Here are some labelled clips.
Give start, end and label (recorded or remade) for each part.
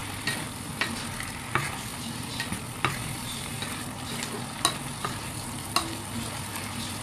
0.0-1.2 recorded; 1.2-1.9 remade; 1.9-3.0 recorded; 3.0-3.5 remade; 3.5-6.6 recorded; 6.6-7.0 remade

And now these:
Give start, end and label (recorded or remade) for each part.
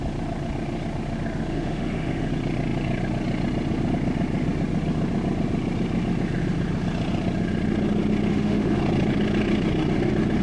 0.0-1.5 recorded; 1.5-2.3 remade; 2.3-8.3 recorded; 8.3-8.8 remade; 8.8-10.4 recorded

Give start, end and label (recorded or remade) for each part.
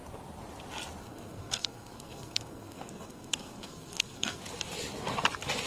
0.0-1.0 recorded; 1.0-4.4 remade; 4.4-5.7 recorded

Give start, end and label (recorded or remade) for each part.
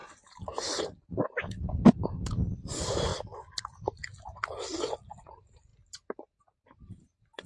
0.0-3.1 remade; 3.1-5.2 recorded; 5.2-7.5 remade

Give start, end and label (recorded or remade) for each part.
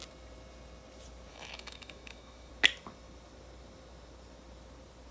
0.0-1.3 recorded; 1.3-2.5 remade; 2.5-5.1 recorded